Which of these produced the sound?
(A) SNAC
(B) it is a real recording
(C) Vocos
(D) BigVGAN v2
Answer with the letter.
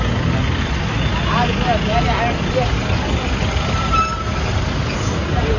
B